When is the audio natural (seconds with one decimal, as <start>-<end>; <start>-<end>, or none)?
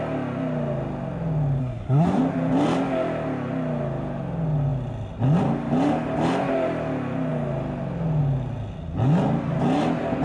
0.0-1.6; 2.2-10.2